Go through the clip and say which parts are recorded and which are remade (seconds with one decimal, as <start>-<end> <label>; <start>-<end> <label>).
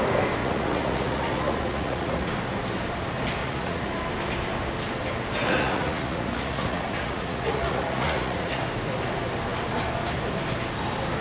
0.0-0.4 recorded; 0.4-2.3 remade; 2.3-3.4 recorded; 3.4-3.9 remade; 3.9-5.4 recorded; 5.4-8.6 remade; 8.6-11.2 recorded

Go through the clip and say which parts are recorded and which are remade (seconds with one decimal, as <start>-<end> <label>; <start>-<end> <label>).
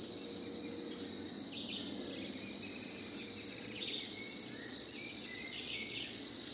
0.0-3.5 recorded; 3.5-6.5 remade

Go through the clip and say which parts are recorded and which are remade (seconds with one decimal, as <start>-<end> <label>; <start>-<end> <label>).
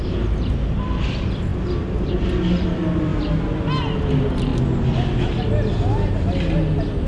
0.0-7.1 recorded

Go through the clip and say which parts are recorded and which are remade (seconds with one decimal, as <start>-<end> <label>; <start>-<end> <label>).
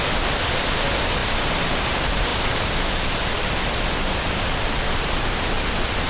0.0-6.1 recorded